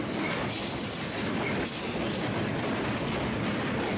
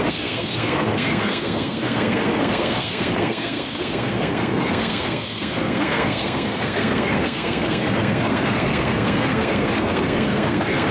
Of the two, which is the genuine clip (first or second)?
first